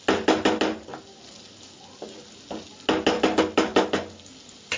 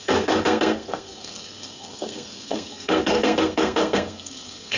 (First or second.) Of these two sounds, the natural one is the first